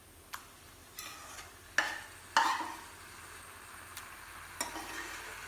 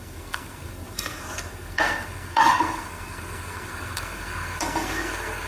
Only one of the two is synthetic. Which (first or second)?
second